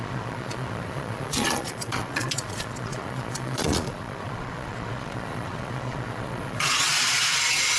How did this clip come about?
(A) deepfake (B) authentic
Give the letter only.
A